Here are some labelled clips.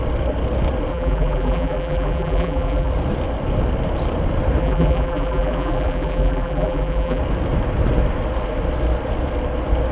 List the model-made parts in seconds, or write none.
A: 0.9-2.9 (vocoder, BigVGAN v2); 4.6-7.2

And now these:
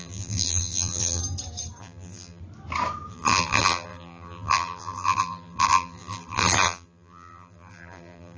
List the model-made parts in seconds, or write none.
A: 0.0-1.2 (vocoder, BigVGAN v2); 1.8-2.4; 3.1-8.4

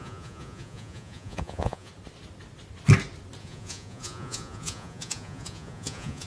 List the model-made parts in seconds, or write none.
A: 0.0-1.9 (vocoder, Vocos); 3.4-6.3